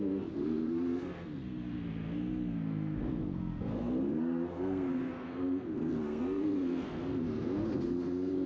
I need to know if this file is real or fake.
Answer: fake